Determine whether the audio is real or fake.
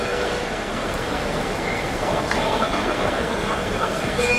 fake